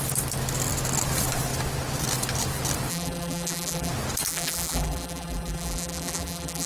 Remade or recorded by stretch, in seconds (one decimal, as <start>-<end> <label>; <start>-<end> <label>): 0.0-2.9 recorded; 2.9-3.9 remade; 3.9-4.3 recorded; 4.3-6.7 remade